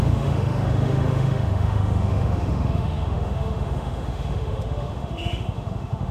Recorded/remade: remade